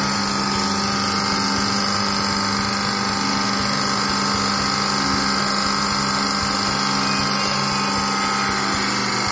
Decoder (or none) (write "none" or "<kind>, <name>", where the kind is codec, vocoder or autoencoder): none